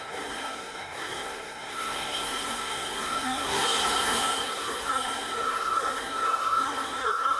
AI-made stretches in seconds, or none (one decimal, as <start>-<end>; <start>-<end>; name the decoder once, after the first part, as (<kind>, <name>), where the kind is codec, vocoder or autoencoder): 0.0-7.4 (codec, SNAC)